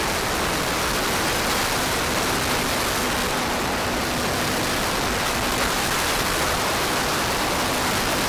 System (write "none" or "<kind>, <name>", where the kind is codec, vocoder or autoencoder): none